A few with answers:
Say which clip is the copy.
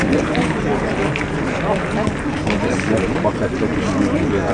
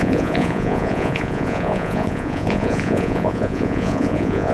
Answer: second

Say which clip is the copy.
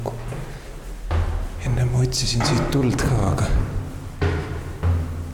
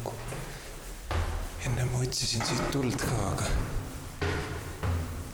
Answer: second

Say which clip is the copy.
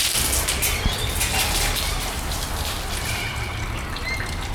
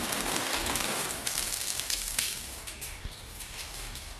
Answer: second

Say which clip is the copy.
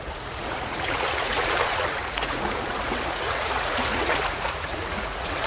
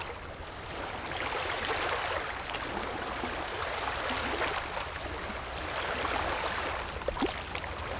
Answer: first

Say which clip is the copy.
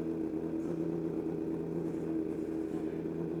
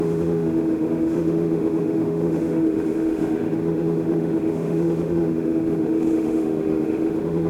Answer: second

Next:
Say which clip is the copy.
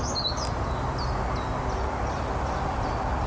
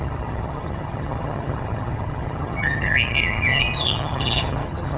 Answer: second